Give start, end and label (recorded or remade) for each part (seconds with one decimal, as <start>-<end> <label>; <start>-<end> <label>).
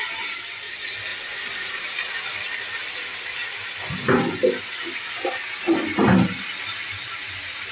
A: 0.0-1.1 recorded; 1.1-2.1 remade; 2.1-7.7 recorded